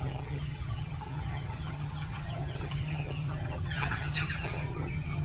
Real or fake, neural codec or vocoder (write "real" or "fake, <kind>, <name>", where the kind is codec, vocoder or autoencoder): fake, vocoder, HiFi-GAN